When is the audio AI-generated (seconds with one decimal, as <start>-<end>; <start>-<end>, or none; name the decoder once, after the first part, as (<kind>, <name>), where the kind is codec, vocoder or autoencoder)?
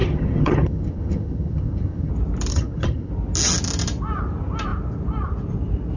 0.0-2.1 (vocoder, HiFi-GAN); 2.5-3.1